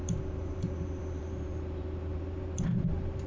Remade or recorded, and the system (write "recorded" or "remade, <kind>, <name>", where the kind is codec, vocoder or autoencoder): remade, vocoder, BigVGAN v2